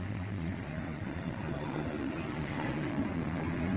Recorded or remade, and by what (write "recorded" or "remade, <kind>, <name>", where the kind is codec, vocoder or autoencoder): remade, vocoder, Vocos